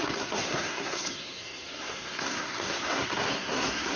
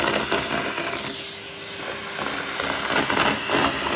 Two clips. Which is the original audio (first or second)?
second